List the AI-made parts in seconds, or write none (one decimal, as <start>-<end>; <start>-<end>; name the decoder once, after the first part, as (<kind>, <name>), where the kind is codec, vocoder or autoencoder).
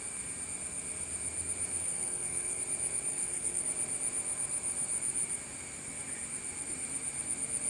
1.8-2.6 (codec, SNAC); 3.1-3.7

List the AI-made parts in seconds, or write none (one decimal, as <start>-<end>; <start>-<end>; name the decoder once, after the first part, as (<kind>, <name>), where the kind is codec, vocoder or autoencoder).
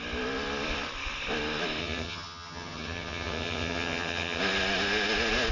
1.8-4.4 (vocoder, HiFi-GAN)